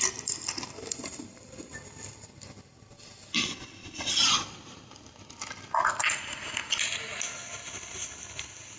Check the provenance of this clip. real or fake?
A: real